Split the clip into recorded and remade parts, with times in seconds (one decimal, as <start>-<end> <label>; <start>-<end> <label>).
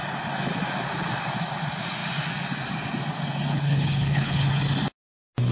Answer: 0.0-3.5 recorded; 3.5-4.5 remade; 4.5-5.5 recorded